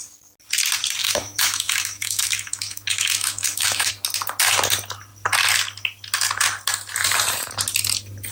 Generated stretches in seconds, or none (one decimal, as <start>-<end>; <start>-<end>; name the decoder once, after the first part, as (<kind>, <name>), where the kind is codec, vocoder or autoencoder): 1.0-3.9 (autoencoder, DAC-VAE)